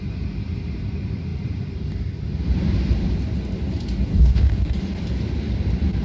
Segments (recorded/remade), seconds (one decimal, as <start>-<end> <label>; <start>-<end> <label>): 0.0-4.1 recorded; 4.1-4.8 remade; 4.8-6.0 recorded